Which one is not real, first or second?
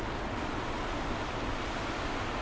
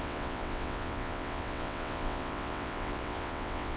second